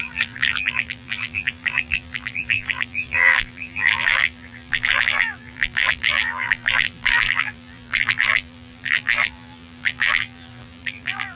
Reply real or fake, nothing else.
fake